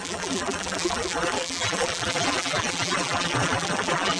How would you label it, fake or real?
fake